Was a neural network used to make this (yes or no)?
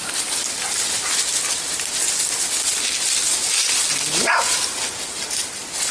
no